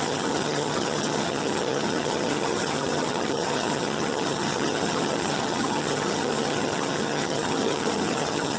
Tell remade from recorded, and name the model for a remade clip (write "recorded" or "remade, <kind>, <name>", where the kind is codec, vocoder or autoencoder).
remade, vocoder, HiFi-GAN